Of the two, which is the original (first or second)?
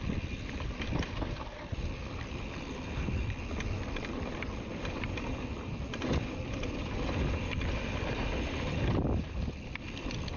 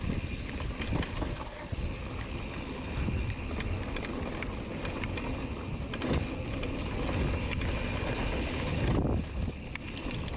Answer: second